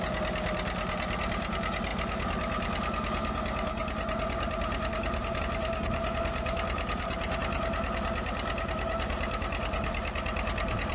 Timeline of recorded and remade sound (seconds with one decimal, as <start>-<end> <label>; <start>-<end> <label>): 0.0-10.9 recorded